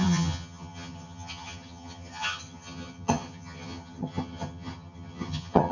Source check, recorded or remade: remade